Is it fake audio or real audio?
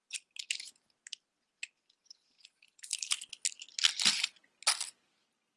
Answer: real